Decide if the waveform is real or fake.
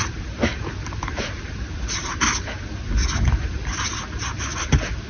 real